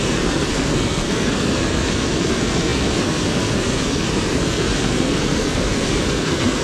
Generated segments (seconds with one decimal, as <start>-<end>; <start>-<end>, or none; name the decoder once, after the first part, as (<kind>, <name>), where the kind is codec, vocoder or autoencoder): 0.0-6.6 (codec, SNAC)